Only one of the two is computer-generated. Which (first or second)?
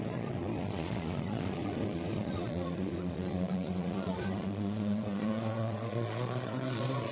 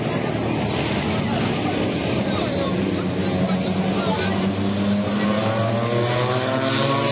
first